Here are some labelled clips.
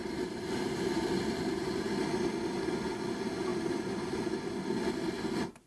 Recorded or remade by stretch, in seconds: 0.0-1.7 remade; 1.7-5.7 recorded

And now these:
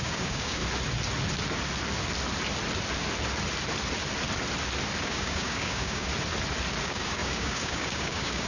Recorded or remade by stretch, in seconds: 0.0-0.6 remade; 0.6-5.0 recorded; 5.0-6.1 remade; 6.1-6.8 recorded; 6.8-8.5 remade

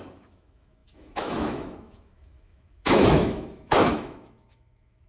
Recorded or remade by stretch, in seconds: 0.0-5.1 remade

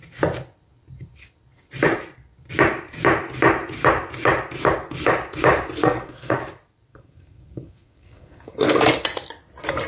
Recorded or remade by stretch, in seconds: 0.0-5.8 recorded; 5.8-6.4 remade; 6.4-6.9 recorded; 6.9-8.8 remade; 8.8-9.9 recorded

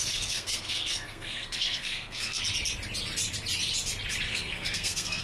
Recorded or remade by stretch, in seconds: 0.0-2.4 remade; 2.4-4.3 recorded; 4.3-5.2 remade